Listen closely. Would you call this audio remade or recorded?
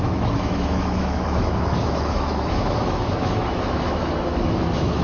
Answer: remade